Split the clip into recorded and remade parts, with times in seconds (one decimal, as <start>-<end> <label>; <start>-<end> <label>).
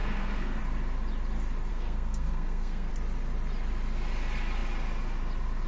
0.0-0.6 remade; 0.6-1.7 recorded; 1.7-2.9 remade; 2.9-5.7 recorded